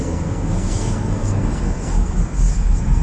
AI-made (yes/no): yes